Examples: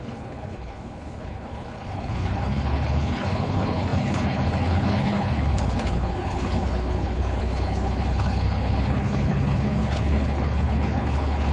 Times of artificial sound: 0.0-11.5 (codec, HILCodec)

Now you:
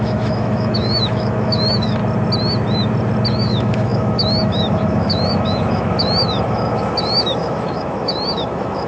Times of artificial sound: 0.0-2.0 (autoencoder, DAC-VAE); 3.3-8.9

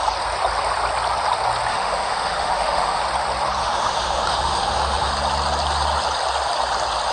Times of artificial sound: 1.7-3.0 (autoencoder, DAC-VAE); 3.6-5.1